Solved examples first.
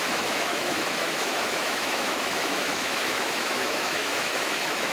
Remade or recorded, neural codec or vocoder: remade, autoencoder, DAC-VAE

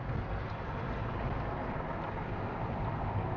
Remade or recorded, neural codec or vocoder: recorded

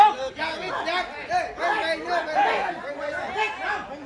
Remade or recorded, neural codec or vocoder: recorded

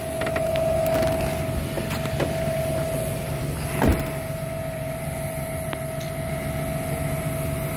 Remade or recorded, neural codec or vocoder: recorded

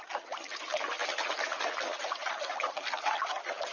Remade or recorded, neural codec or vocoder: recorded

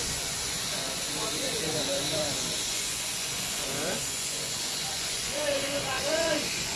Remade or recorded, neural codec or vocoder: remade, vocoder, Vocos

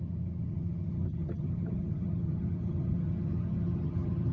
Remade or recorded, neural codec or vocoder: remade, vocoder, HiFi-GAN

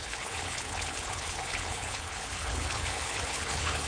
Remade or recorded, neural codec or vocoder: remade, codec, HILCodec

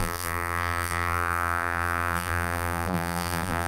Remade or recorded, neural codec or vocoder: remade, vocoder, BigVGAN v2